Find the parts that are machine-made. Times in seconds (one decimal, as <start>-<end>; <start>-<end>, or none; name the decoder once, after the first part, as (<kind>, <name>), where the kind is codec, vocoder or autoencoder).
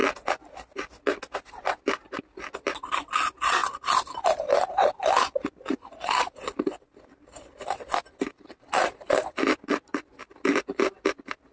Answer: none